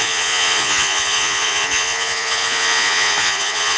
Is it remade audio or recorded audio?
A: remade